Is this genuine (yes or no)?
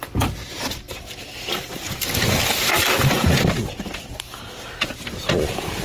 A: yes